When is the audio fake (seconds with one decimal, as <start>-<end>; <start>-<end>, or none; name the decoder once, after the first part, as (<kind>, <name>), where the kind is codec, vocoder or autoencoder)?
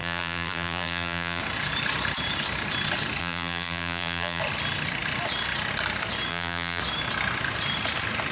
0.0-1.4 (vocoder, BigVGAN v2); 3.2-4.4; 6.3-6.8